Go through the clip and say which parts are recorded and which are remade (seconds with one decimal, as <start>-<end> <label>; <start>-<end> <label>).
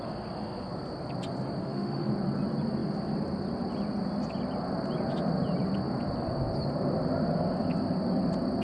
0.0-1.6 recorded; 1.6-2.1 remade; 2.1-8.6 recorded